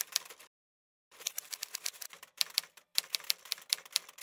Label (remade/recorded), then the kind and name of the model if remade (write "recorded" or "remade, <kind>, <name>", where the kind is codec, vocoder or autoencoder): remade, vocoder, BigVGAN v2